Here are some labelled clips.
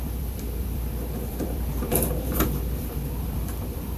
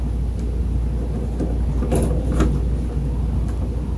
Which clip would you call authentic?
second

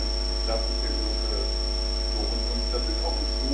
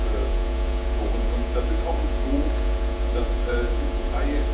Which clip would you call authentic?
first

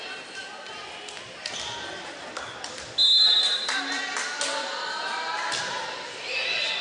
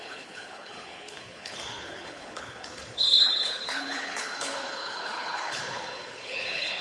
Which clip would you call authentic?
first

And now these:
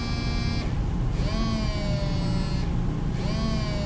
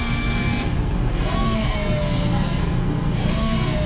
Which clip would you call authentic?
first